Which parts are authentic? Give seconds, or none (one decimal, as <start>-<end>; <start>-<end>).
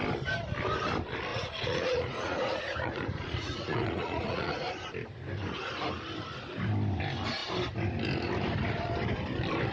0.0-1.3; 4.7-9.7